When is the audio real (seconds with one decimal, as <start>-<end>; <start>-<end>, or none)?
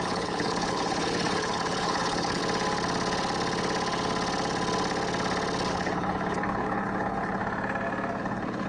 2.4-5.7; 7.4-8.2